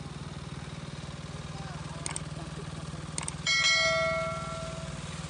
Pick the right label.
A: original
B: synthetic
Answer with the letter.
A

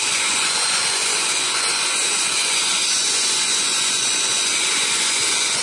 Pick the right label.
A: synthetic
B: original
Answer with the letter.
A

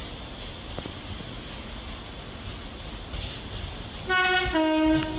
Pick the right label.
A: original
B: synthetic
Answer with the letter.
A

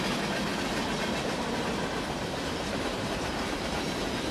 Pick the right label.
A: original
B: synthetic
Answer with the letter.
A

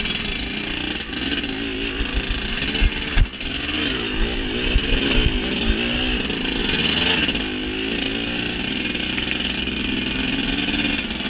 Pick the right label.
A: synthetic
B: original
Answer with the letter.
B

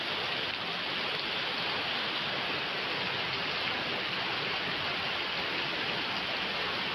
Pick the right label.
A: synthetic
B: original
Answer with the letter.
B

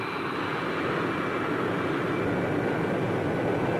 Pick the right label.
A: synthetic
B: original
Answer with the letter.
B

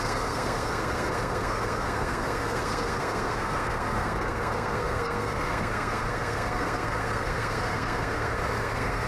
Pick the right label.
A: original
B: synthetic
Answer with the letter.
B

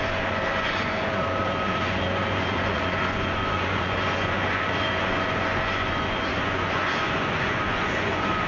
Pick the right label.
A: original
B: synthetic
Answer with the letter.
B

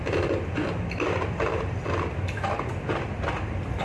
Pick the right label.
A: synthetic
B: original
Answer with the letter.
B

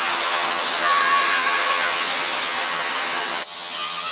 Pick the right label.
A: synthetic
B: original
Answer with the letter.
A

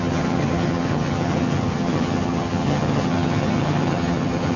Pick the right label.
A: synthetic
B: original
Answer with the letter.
A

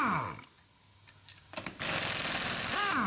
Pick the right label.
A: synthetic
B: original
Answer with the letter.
B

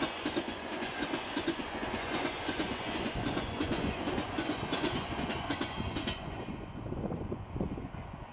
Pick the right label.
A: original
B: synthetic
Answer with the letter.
B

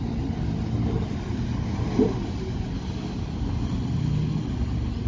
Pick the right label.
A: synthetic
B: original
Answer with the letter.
B